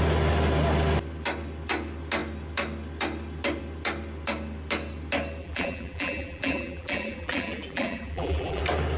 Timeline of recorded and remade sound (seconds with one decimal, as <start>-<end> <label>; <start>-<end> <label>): 0.0-5.4 recorded; 5.4-8.6 remade; 8.6-9.0 recorded